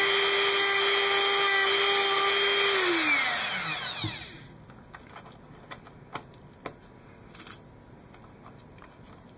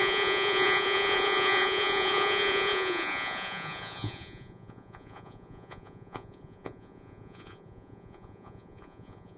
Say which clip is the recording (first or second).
first